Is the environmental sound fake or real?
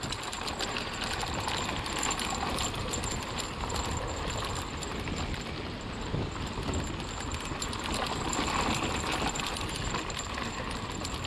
real